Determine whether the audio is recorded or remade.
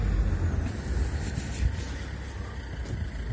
recorded